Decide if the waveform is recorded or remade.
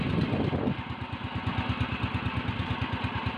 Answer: recorded